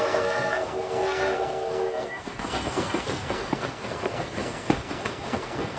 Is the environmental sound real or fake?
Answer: fake